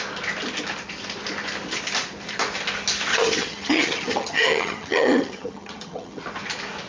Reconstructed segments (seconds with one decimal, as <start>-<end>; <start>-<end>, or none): 3.1-6.2